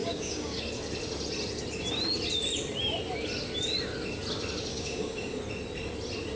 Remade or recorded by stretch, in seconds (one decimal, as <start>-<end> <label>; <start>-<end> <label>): 0.0-0.6 remade; 0.6-4.7 recorded; 4.7-5.4 remade; 5.4-6.4 recorded